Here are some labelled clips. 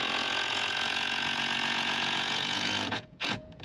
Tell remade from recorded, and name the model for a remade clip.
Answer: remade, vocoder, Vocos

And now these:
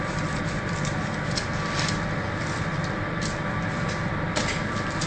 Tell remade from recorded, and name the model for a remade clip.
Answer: remade, vocoder, BigVGAN v2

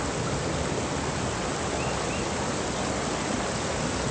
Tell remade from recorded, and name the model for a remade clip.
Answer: recorded